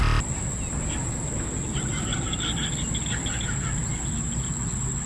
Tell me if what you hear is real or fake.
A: real